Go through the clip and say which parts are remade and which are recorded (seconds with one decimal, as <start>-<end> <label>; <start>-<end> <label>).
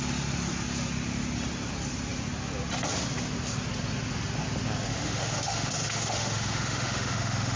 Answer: 0.0-4.9 recorded; 4.9-7.6 remade